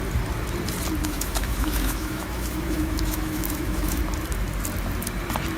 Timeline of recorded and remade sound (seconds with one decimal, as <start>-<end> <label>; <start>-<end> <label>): 0.0-1.0 recorded; 1.0-4.0 remade; 4.0-5.6 recorded